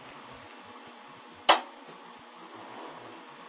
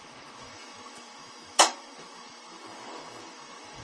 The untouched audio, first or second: first